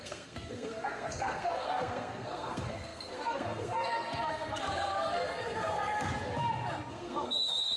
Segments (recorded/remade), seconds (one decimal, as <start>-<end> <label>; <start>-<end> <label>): 0.0-6.1 remade; 6.1-6.9 recorded; 6.9-7.8 remade